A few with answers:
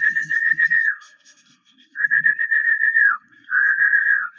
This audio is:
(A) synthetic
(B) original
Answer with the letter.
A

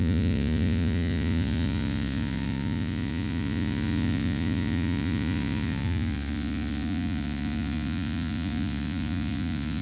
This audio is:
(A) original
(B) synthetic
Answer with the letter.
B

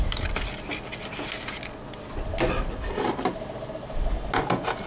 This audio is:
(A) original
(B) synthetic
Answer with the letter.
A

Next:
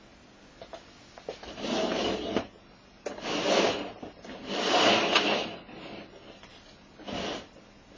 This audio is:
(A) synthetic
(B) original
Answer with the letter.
B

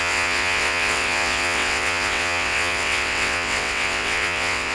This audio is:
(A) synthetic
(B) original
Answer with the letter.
A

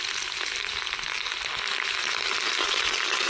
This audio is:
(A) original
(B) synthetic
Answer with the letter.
A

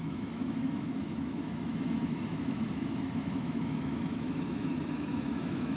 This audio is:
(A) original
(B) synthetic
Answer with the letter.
B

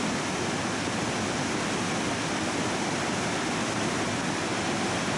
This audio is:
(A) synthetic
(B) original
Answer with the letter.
B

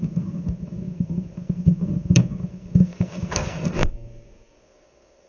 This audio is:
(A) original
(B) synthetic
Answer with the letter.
B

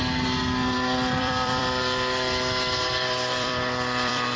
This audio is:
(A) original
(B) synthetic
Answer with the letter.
B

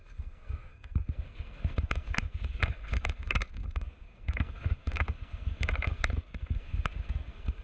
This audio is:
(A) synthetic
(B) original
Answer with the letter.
A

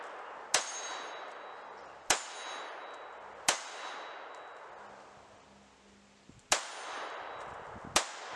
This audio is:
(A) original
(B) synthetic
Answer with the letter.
A